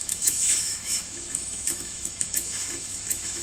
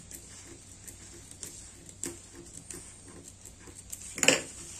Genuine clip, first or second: second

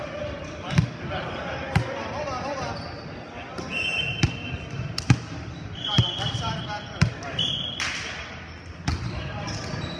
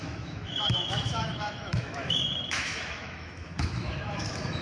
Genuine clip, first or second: first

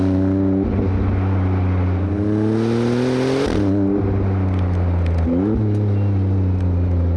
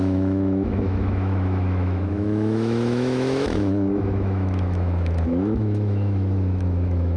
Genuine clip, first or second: first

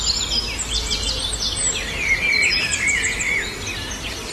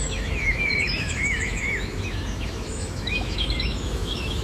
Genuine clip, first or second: first